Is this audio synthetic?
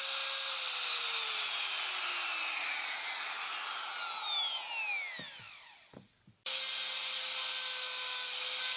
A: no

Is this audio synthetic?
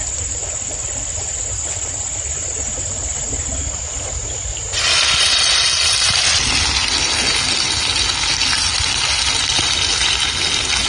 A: no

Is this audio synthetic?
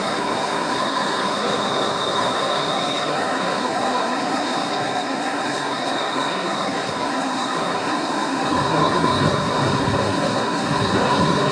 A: yes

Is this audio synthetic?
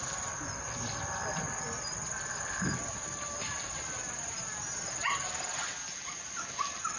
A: yes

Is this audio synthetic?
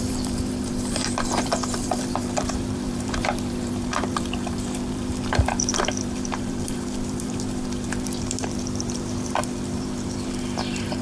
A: yes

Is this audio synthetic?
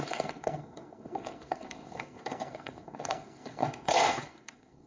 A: yes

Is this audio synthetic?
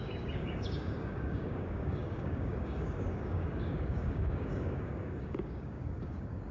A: yes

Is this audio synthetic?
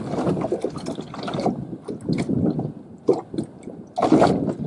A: no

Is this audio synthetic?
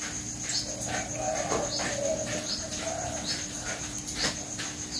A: no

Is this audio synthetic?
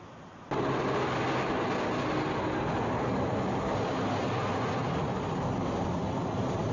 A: no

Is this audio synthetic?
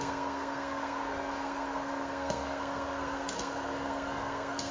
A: yes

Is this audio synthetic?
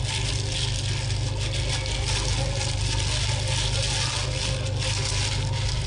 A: no